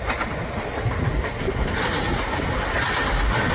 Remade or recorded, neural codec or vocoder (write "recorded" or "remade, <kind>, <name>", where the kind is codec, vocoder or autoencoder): recorded